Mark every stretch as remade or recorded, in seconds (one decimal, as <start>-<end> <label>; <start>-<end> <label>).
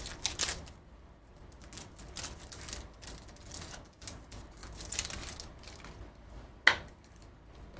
0.0-7.8 recorded